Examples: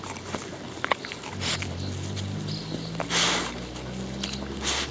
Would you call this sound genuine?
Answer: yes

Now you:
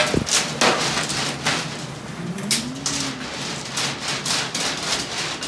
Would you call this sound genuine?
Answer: yes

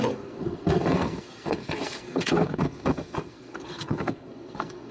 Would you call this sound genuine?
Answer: no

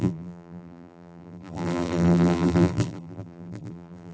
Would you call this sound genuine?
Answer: no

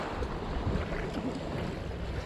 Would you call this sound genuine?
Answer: yes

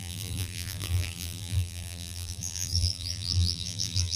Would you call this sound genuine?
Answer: no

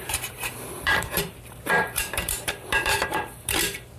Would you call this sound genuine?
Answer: no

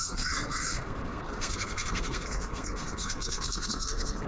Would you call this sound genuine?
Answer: no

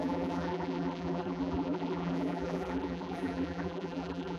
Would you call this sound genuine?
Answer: no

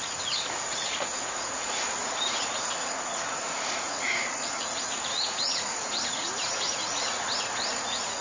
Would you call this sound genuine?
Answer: no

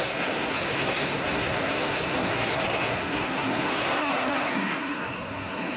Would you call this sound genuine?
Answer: no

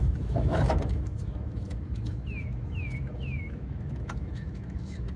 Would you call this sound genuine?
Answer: no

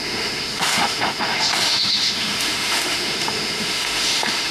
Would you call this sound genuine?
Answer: no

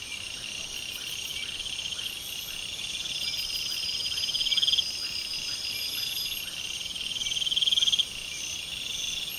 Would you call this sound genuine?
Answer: yes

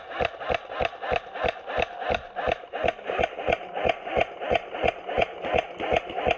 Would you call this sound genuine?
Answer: yes